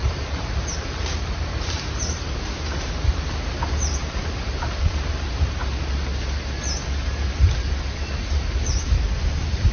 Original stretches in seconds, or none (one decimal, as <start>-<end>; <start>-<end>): 5.6-9.2